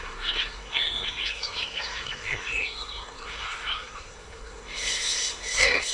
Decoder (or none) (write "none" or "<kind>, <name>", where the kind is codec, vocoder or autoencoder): codec, SNAC